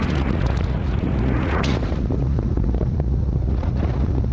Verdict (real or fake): fake